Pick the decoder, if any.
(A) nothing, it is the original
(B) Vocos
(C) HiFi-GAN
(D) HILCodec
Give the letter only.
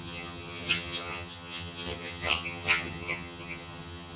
C